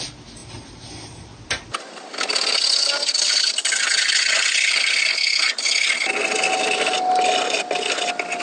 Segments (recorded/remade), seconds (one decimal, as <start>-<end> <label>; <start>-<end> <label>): 0.0-8.4 recorded